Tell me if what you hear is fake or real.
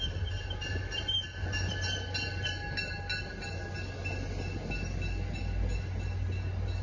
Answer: real